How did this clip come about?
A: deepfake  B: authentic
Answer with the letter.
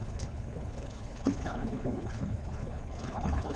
A